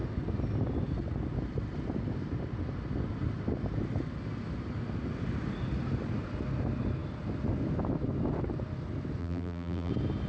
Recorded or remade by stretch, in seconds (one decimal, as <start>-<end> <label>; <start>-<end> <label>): 0.0-9.2 recorded; 9.2-9.9 remade; 9.9-10.3 recorded